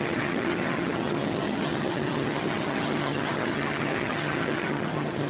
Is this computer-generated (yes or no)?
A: yes